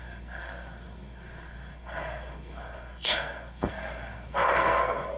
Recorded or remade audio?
remade